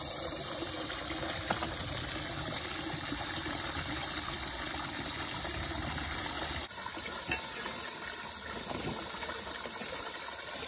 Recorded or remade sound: recorded